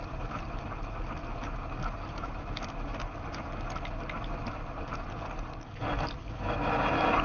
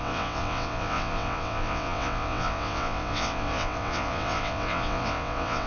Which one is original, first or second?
first